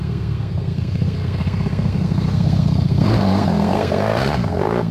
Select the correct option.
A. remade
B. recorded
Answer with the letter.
A